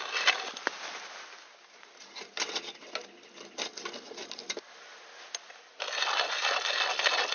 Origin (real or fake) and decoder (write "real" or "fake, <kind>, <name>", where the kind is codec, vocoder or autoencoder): real